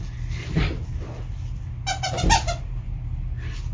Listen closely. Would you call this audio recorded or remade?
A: recorded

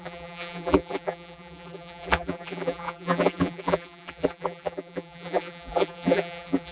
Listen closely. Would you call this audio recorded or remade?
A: remade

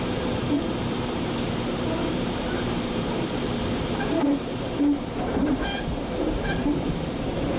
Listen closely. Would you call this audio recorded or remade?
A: remade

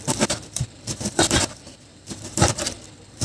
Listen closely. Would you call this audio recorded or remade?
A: remade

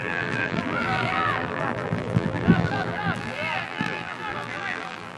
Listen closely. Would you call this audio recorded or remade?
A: remade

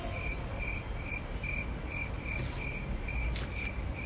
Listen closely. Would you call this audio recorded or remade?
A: recorded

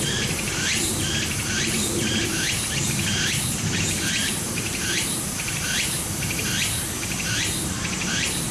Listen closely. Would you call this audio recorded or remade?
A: remade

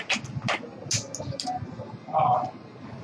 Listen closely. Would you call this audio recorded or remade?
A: recorded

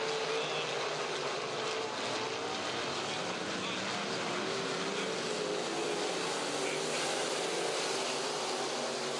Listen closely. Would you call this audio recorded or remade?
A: recorded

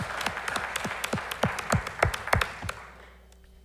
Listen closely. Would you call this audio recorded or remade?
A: recorded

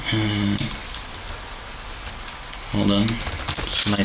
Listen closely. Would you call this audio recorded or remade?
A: recorded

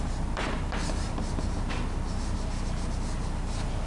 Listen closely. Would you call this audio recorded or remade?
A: remade